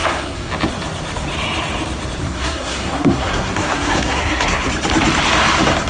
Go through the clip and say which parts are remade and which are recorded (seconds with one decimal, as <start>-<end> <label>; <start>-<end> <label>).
0.0-0.5 remade; 0.5-2.2 recorded; 2.2-4.7 remade; 4.7-5.9 recorded